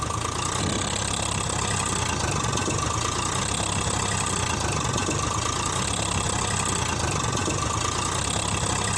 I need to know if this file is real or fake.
real